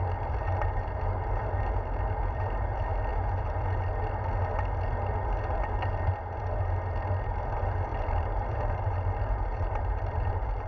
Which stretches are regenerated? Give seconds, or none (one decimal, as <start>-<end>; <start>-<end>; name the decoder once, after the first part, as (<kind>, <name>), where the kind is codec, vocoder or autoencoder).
7.9-10.7 (vocoder, BigVGAN v2)